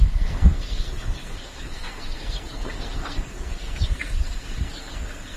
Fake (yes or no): yes